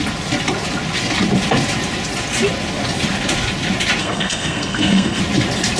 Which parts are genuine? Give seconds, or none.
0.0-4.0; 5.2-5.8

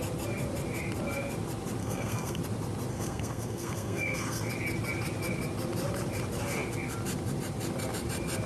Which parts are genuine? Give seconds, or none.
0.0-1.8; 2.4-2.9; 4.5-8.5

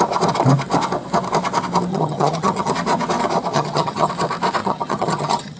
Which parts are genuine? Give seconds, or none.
0.0-1.9; 2.7-3.5; 4.1-4.6